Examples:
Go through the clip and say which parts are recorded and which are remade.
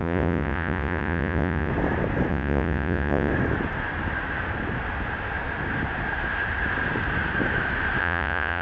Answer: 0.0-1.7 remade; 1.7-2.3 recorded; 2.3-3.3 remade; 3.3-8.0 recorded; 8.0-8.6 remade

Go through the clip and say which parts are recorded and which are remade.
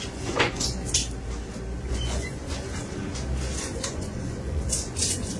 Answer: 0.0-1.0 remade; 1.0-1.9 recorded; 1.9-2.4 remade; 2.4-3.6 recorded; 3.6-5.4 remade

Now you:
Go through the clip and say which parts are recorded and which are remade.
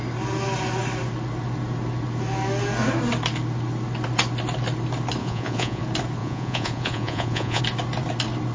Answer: 0.0-5.2 recorded; 5.2-5.8 remade; 5.8-6.2 recorded; 6.2-7.6 remade; 7.6-8.5 recorded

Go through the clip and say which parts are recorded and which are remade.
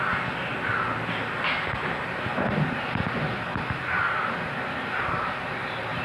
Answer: 0.0-6.0 recorded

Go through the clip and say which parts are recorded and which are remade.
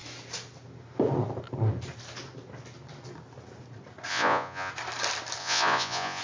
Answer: 0.0-4.1 recorded; 4.1-4.7 remade; 4.7-5.4 recorded; 5.4-6.2 remade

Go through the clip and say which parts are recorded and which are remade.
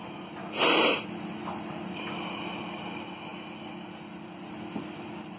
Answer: 0.0-5.4 recorded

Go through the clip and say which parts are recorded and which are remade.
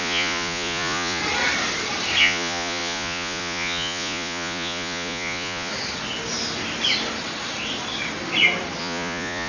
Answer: 0.0-1.2 remade; 1.2-2.2 recorded; 2.2-5.7 remade; 5.7-8.8 recorded; 8.8-9.5 remade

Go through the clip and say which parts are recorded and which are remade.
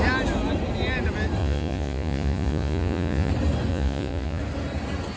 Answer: 0.0-1.4 recorded; 1.4-3.3 remade; 3.3-3.7 recorded; 3.7-4.4 remade; 4.4-5.2 recorded